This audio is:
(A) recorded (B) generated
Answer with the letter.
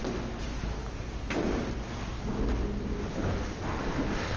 A